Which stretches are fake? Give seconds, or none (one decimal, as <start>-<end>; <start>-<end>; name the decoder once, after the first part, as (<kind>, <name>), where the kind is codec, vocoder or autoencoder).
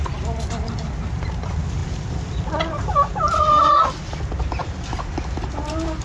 1.8-2.4 (vocoder, BigVGAN v2); 4.6-5.3